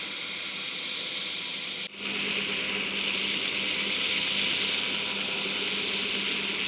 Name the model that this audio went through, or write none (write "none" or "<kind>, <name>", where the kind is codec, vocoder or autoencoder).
none